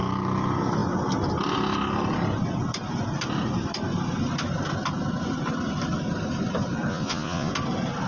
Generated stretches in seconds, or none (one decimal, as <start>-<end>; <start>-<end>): 6.9-7.5